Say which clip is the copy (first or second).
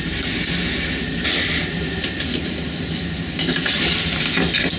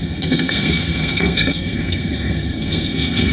second